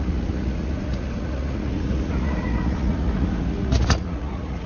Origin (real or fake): fake